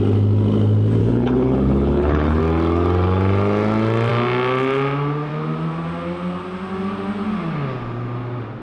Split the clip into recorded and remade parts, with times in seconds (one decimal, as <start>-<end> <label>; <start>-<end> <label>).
0.0-1.0 recorded; 1.0-2.4 remade; 2.4-8.6 recorded